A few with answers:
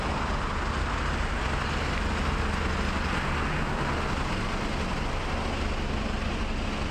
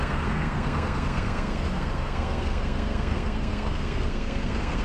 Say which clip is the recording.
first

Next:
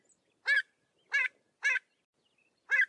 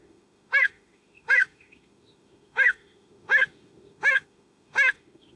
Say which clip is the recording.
first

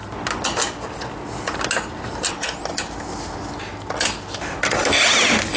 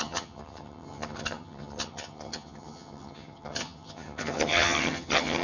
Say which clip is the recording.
first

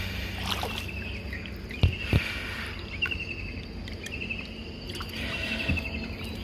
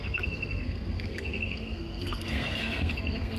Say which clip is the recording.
first